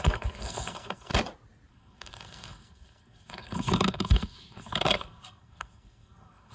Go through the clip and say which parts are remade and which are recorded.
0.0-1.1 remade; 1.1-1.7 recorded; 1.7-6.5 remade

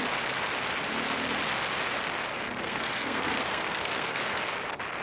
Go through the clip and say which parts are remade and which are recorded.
0.0-2.6 recorded; 2.6-4.2 remade; 4.2-5.0 recorded

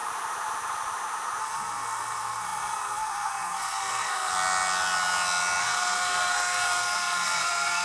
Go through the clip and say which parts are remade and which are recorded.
0.0-1.4 recorded; 1.4-4.3 remade; 4.3-5.6 recorded; 5.6-7.8 remade

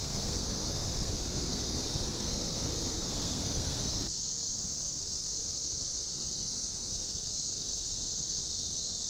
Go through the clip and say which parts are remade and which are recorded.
0.0-9.1 remade

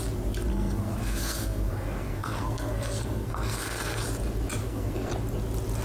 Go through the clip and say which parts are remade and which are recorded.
0.0-0.5 recorded; 0.5-4.0 remade; 4.0-4.6 recorded; 4.6-5.1 remade; 5.1-5.8 recorded

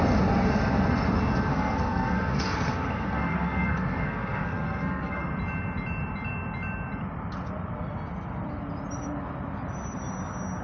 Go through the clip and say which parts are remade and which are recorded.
0.0-1.5 recorded; 1.5-5.3 remade; 5.3-10.6 recorded

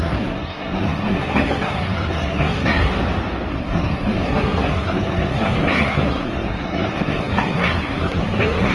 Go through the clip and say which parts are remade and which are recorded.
0.0-2.9 remade; 2.9-3.5 recorded; 3.5-8.7 remade

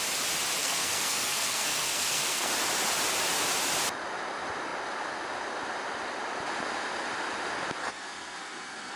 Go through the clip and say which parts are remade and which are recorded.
0.0-0.6 recorded; 0.6-2.5 remade; 2.5-7.8 recorded; 7.8-9.0 remade